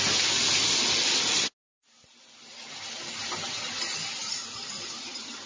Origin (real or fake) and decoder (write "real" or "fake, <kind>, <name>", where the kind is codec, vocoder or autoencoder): real